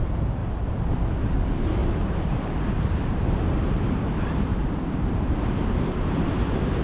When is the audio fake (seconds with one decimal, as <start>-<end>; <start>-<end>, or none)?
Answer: 0.0-0.4; 1.4-6.8